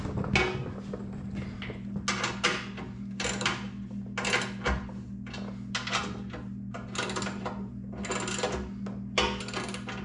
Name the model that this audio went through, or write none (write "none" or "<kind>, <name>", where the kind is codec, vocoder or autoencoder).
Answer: none